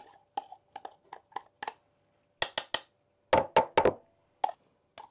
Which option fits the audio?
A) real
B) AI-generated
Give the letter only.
A